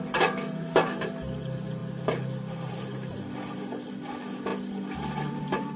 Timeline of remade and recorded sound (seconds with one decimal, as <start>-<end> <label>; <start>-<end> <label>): 0.0-5.8 recorded